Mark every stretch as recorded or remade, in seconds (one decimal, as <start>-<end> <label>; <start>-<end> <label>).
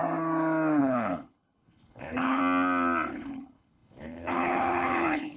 0.0-0.8 recorded; 0.8-2.4 remade; 2.4-3.1 recorded; 3.1-5.4 remade